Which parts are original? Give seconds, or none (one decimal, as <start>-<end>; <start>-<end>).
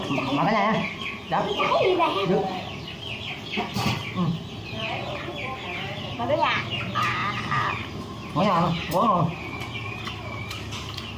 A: 0.0-2.4; 6.3-11.2